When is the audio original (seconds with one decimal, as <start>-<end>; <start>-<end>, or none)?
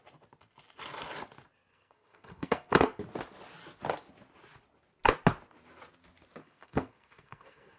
0.0-1.7; 3.0-6.4